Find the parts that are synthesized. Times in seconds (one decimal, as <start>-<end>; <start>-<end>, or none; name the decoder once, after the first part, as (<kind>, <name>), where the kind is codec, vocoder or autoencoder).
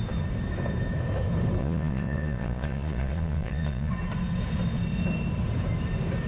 1.6-3.9 (vocoder, Vocos)